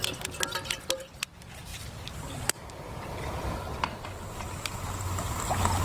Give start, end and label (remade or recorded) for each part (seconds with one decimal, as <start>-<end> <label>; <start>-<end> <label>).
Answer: 0.0-1.7 recorded; 1.7-3.3 remade; 3.3-5.8 recorded